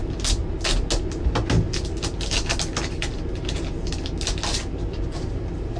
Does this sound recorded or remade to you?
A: recorded